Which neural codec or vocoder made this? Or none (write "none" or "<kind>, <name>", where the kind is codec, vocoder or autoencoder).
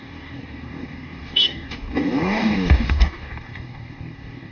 codec, DAC